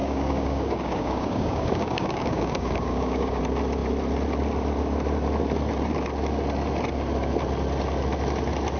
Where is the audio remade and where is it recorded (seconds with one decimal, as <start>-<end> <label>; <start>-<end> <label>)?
0.0-3.4 remade; 3.4-8.8 recorded